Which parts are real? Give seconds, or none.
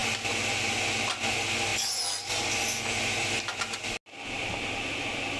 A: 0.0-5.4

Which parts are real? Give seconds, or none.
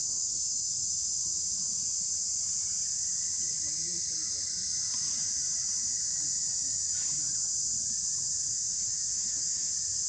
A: 0.9-8.5; 9.7-10.1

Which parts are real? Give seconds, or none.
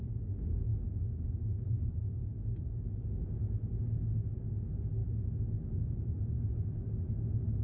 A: 0.0-7.6